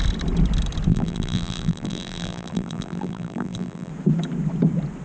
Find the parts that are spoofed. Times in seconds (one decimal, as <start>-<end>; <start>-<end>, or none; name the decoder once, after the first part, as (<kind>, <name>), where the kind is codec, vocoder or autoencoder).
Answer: 0.9-3.9 (vocoder, BigVGAN v2)